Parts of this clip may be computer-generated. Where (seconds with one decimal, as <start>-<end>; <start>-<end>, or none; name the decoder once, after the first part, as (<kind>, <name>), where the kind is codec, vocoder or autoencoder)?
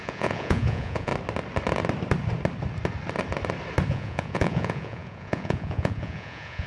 0.0-1.1 (vocoder, Vocos); 3.9-6.7